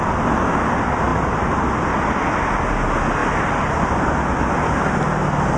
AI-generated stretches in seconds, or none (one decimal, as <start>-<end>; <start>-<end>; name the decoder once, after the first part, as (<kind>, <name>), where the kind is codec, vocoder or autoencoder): none